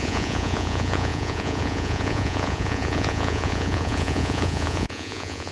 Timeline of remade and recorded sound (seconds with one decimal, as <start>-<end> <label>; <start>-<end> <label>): 0.0-5.5 remade